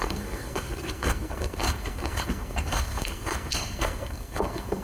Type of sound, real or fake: fake